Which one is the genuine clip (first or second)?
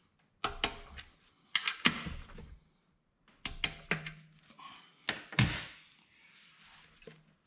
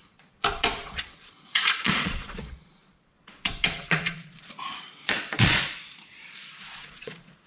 first